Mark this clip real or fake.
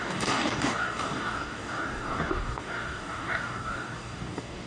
fake